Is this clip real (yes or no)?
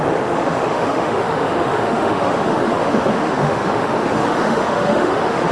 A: no